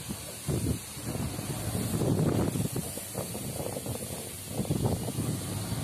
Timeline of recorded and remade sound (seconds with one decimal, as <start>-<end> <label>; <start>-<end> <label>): 0.0-5.8 recorded